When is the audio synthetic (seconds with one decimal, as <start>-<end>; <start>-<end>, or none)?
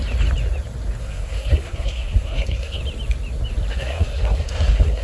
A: 1.0-2.8; 3.7-5.0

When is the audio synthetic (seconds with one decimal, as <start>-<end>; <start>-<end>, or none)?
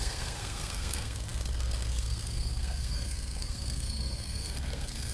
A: 0.0-5.1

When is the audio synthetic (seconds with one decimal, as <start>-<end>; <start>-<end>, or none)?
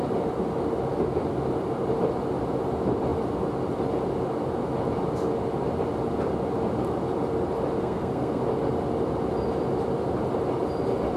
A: 7.8-8.4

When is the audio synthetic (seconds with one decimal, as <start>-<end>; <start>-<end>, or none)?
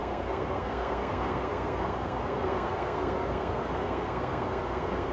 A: 0.0-5.1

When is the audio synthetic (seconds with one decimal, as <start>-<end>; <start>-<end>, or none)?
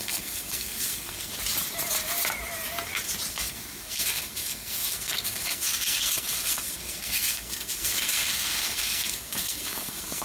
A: 0.0-1.3; 3.3-10.2